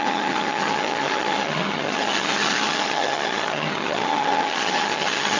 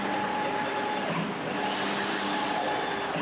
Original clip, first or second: second